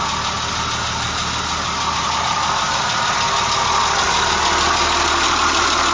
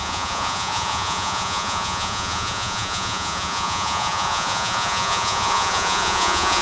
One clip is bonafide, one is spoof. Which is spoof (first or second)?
second